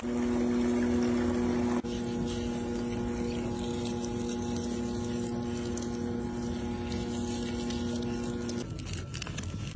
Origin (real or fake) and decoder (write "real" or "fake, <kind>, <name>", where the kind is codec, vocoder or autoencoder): real